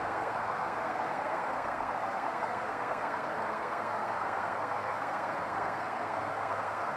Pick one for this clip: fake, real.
fake